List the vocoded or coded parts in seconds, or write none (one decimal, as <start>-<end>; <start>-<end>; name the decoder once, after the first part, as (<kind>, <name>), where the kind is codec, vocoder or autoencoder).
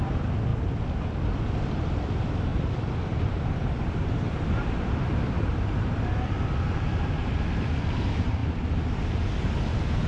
2.5-6.2 (vocoder, BigVGAN v2); 8.4-9.0